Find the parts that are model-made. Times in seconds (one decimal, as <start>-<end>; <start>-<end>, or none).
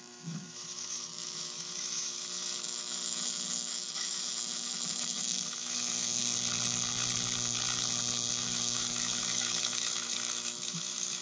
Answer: 0.0-6.2; 8.4-11.2